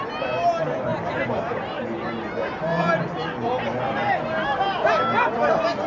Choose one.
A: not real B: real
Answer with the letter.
B